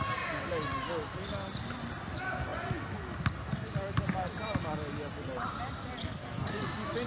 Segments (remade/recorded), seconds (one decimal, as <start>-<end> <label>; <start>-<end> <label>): 0.0-6.0 recorded; 6.0-6.6 remade; 6.6-7.1 recorded

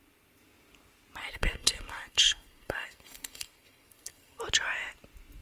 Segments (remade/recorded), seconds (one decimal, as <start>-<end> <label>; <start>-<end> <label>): 0.0-1.2 recorded; 1.2-4.4 remade; 4.4-5.4 recorded

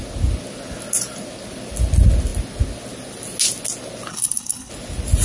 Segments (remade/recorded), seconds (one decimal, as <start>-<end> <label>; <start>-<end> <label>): 0.0-4.1 recorded; 4.1-4.7 remade; 4.7-5.2 recorded